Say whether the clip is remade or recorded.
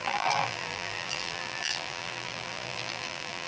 remade